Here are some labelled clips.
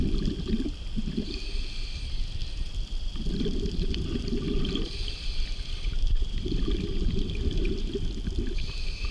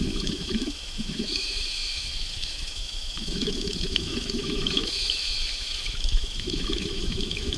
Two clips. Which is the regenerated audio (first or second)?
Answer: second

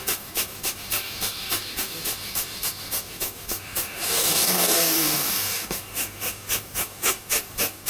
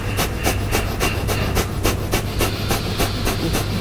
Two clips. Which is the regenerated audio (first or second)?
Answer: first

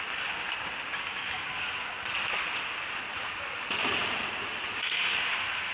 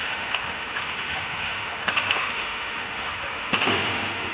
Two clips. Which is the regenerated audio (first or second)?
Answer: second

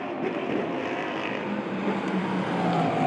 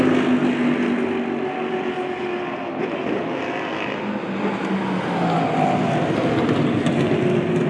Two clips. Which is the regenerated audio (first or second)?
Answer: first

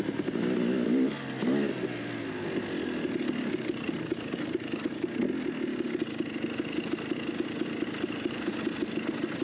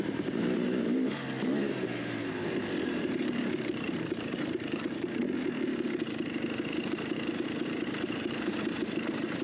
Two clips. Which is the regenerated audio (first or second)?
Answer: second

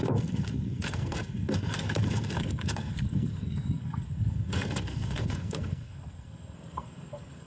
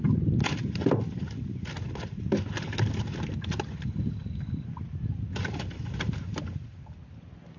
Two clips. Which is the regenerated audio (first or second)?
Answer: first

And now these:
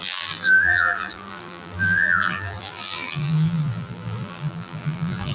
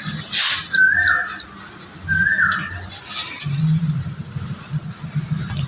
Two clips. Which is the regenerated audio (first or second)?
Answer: first